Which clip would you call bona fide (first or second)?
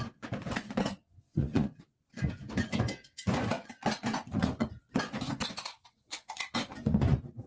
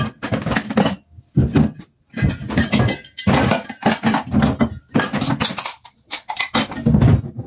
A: second